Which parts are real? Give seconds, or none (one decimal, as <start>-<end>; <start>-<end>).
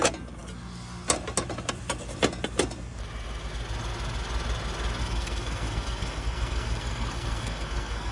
0.0-5.0